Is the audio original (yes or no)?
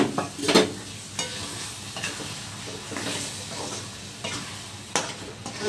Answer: yes